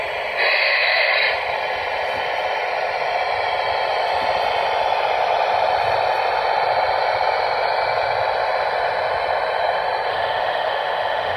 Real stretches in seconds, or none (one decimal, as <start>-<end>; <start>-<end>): 0.0-0.6; 1.1-10.1